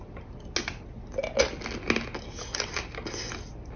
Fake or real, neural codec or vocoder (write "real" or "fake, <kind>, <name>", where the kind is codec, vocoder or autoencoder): real